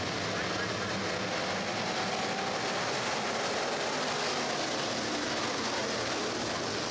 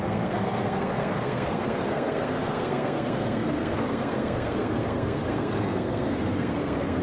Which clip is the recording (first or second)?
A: first